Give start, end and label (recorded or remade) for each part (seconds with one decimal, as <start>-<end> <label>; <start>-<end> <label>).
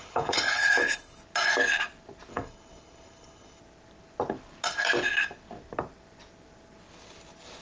0.0-1.2 remade; 1.2-2.3 recorded; 2.3-3.6 remade; 3.6-7.6 recorded